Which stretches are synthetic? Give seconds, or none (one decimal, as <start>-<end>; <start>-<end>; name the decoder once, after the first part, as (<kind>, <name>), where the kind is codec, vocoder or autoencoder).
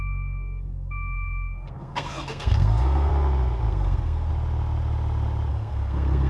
0.0-3.1 (codec, SNAC); 3.7-4.3; 5.5-6.3